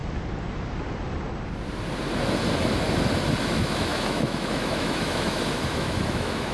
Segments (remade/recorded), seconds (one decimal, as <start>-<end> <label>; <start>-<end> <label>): 0.0-3.4 recorded; 3.4-6.5 remade